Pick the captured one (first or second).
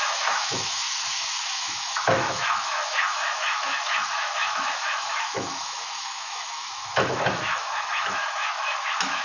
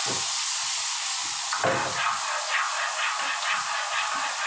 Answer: second